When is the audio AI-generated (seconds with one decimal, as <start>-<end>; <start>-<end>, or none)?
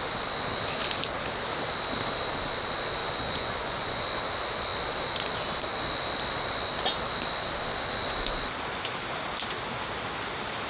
3.0-4.0